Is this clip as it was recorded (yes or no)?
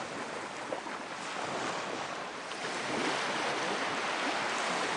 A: yes